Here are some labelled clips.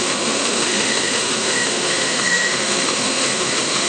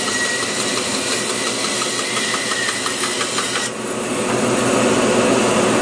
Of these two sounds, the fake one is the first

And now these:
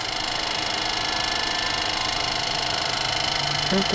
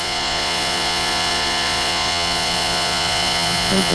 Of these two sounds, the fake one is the second